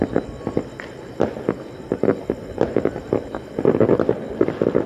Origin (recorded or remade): recorded